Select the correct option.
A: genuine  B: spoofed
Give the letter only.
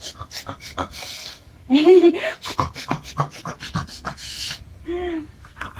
B